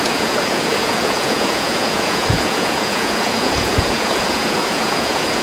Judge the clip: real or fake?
fake